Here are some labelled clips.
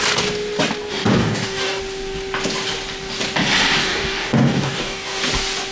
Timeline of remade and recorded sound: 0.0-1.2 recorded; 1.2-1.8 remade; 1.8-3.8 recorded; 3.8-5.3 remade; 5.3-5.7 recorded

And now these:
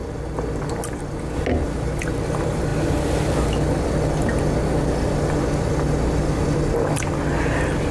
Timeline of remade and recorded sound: 0.0-7.9 recorded

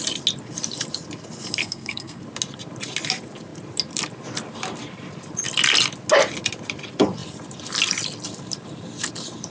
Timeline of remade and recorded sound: 0.0-1.6 recorded; 1.6-2.2 remade; 2.2-9.5 recorded

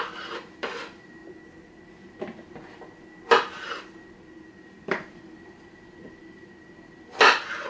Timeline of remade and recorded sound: 0.0-1.2 remade; 1.2-4.6 recorded; 4.6-7.7 remade

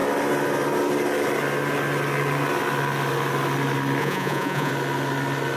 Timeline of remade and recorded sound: 0.0-4.0 recorded; 4.0-4.7 remade; 4.7-5.6 recorded